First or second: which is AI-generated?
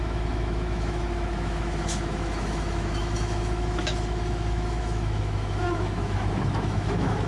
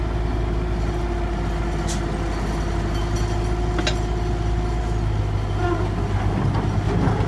first